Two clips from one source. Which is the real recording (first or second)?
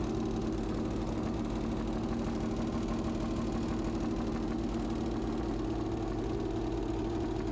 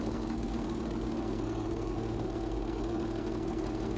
first